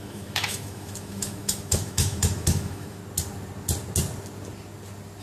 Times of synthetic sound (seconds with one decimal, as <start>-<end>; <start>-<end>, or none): 0.0-3.0